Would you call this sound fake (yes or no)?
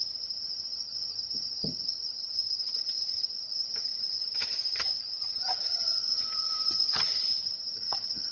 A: yes